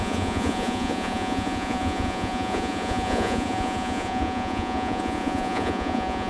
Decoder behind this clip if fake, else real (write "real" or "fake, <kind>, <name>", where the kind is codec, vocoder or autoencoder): fake, vocoder, Vocos